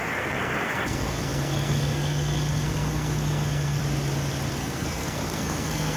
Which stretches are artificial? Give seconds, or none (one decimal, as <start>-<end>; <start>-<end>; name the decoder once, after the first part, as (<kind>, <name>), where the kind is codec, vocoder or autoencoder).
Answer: 0.0-3.8 (codec, SNAC); 4.5-6.0

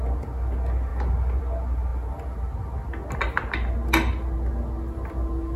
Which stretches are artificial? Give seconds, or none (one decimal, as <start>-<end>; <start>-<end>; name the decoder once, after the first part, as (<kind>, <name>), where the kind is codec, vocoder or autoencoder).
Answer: none

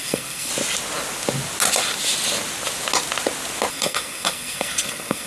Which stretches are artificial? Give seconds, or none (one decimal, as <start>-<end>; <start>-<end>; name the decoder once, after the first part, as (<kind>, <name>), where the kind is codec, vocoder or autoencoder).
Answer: 0.0-0.5 (codec, SNAC); 3.7-5.3

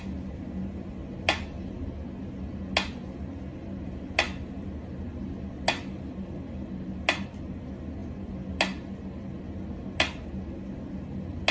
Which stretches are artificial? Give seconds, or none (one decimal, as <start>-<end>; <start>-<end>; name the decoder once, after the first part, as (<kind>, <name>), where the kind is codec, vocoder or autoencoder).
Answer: none

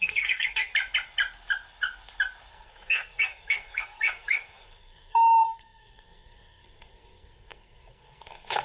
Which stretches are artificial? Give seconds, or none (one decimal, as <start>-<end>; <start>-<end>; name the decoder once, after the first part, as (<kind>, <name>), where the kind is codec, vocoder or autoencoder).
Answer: 0.0-0.7 (codec, SNAC); 2.5-8.6